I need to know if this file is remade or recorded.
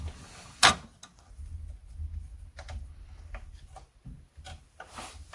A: recorded